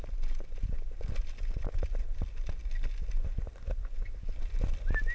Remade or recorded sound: recorded